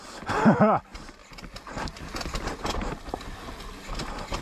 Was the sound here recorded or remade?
recorded